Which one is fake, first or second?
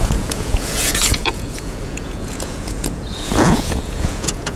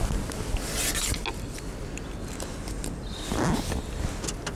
first